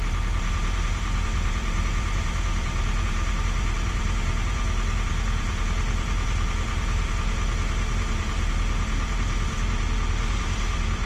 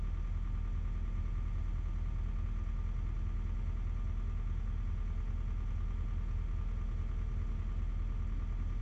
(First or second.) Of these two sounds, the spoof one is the first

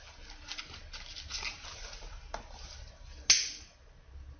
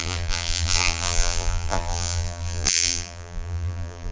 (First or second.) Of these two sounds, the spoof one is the second